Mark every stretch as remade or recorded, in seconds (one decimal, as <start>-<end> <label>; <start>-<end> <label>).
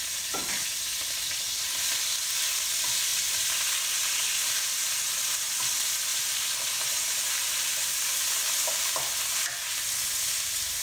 0.0-10.8 recorded